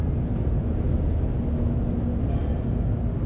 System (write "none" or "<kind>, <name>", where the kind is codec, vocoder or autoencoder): none